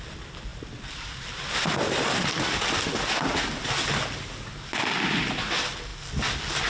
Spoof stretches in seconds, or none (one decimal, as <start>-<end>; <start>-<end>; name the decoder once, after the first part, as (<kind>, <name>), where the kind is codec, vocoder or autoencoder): none